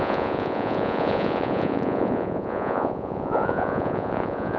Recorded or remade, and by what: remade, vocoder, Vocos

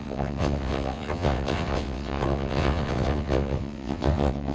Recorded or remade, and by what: remade, vocoder, WaveNeXt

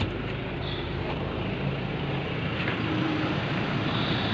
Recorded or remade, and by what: remade, vocoder, BigVGAN v2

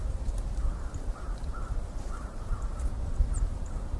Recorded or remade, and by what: remade, vocoder, BigVGAN v2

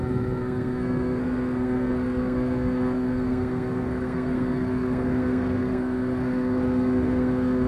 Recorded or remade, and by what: remade, codec, SNAC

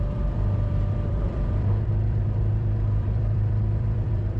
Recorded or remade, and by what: remade, vocoder, BigVGAN v2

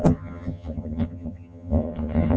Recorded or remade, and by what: remade, vocoder, HiFi-GAN